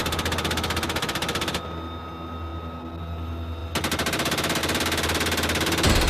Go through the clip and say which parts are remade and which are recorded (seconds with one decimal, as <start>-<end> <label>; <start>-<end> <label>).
0.0-6.1 recorded